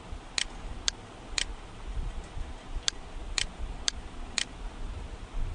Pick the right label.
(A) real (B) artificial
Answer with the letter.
A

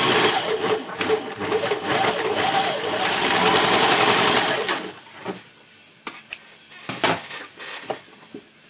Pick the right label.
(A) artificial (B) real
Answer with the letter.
A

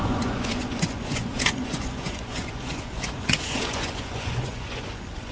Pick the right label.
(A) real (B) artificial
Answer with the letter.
B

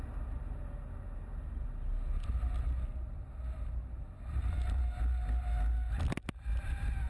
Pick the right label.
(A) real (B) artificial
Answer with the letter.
A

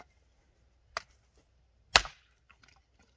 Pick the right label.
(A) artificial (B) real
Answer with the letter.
B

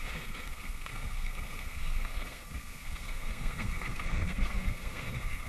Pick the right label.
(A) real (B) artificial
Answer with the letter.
B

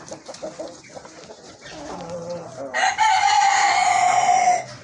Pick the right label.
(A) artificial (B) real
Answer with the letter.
B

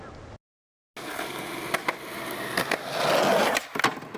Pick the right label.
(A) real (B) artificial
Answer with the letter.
A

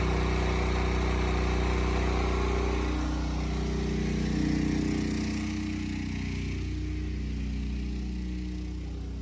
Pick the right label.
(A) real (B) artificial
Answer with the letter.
A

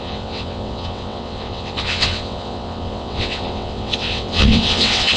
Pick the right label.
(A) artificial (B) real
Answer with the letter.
A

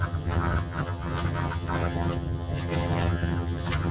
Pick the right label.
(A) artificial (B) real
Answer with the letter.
A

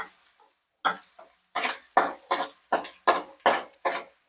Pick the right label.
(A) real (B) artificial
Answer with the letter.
A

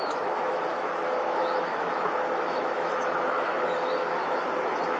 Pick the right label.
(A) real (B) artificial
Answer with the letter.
B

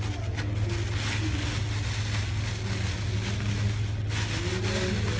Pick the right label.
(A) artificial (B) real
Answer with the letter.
B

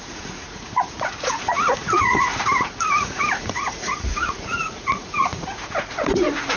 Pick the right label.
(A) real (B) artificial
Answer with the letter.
B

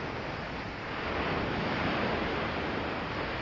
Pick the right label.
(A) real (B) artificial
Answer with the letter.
A